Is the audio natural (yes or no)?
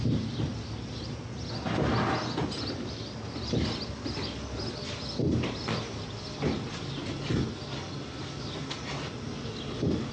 yes